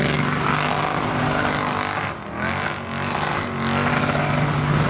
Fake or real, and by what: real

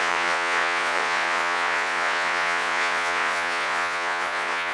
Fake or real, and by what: fake, vocoder, Vocos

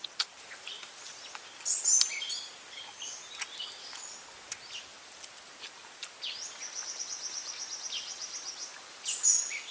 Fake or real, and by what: real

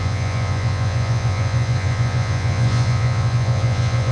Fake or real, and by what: fake, vocoder, Vocos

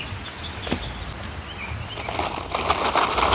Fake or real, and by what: real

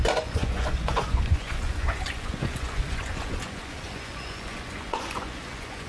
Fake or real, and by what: fake, vocoder, Vocos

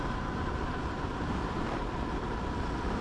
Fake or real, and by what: real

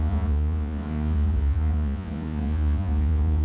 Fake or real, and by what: fake, vocoder, Vocos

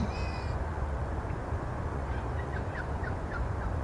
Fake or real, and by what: fake, vocoder, Vocos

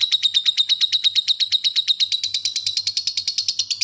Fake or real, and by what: real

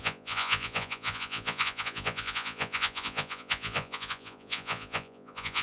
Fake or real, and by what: fake, vocoder, Vocos